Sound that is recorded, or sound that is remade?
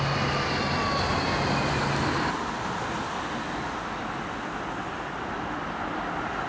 recorded